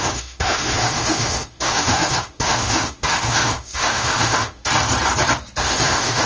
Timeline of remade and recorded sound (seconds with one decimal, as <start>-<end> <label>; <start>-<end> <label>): 0.0-4.6 remade; 4.6-5.6 recorded; 5.6-6.3 remade